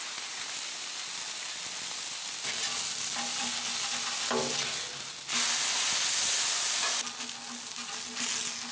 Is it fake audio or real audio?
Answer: real